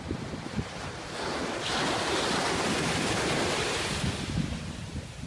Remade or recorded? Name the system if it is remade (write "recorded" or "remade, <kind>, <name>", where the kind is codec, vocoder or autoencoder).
recorded